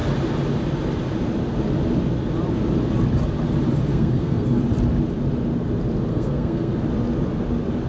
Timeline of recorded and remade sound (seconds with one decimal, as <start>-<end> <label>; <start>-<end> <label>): 0.0-3.9 recorded; 3.9-4.6 remade; 4.6-6.1 recorded; 6.1-6.7 remade; 6.7-7.9 recorded